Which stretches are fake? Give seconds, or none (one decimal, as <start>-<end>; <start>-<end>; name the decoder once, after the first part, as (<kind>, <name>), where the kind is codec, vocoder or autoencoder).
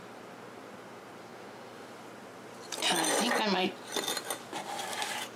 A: none